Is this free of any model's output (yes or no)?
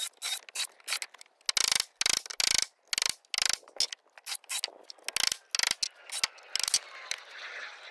yes